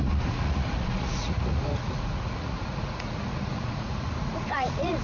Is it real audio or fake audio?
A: fake